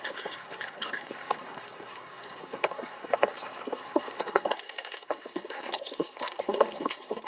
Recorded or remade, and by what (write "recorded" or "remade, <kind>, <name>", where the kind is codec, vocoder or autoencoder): remade, codec, SNAC